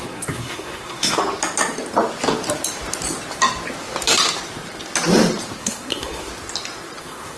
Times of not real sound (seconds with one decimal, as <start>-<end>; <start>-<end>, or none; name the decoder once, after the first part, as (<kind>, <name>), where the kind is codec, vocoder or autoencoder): 0.0-1.2 (codec, SNAC); 5.6-6.3; 7.0-7.4